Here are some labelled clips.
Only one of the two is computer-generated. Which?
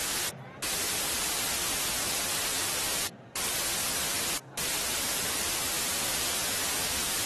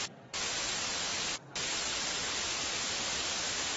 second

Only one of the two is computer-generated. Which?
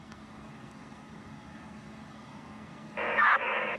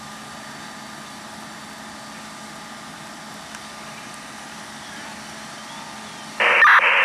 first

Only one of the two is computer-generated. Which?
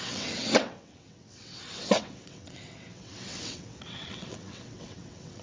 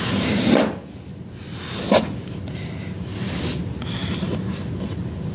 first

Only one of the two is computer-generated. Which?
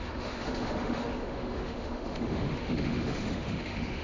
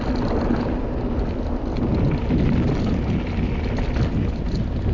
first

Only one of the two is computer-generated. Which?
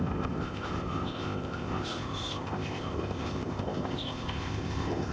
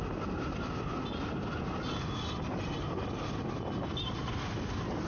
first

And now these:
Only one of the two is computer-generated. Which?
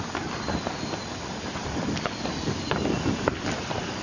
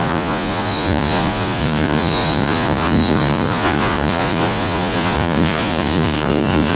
second